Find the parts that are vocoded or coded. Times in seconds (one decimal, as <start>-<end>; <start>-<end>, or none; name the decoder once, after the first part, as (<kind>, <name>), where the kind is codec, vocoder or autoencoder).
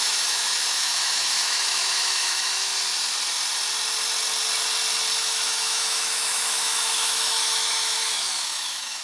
0.0-2.7 (autoencoder, DAC-VAE); 5.2-9.0